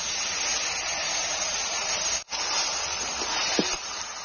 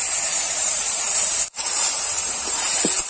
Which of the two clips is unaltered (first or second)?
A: first